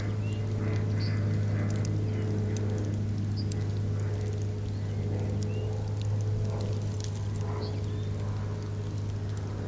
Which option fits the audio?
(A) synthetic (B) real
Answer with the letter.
B